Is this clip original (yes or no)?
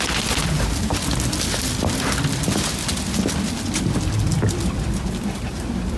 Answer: yes